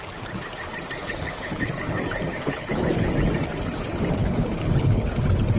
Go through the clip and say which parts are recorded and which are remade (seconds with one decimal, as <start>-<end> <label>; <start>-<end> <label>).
0.0-1.0 recorded; 1.0-1.8 remade; 1.8-2.3 recorded; 2.3-3.1 remade; 3.1-4.2 recorded; 4.2-5.1 remade; 5.1-5.6 recorded